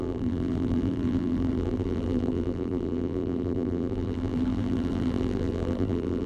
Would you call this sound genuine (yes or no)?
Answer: no